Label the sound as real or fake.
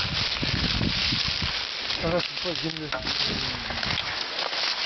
real